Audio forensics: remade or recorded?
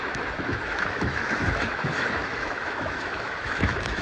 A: remade